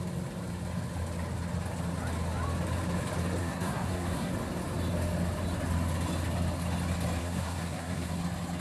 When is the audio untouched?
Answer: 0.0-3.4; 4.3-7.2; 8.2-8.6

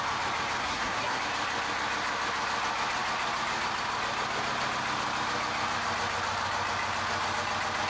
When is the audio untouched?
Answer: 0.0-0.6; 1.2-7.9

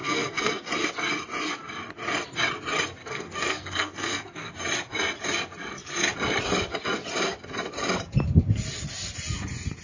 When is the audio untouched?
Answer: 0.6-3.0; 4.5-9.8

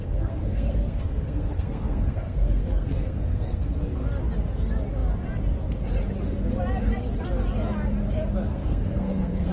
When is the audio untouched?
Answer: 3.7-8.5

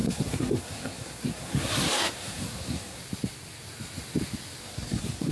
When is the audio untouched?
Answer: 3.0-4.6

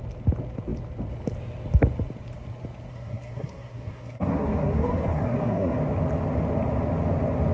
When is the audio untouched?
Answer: 0.0-2.9; 5.8-7.5